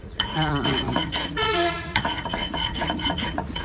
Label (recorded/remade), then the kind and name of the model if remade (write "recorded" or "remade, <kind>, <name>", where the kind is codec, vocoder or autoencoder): remade, vocoder, Vocos